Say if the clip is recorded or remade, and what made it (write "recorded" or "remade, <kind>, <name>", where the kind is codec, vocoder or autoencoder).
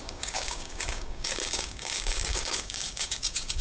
remade, codec, DAC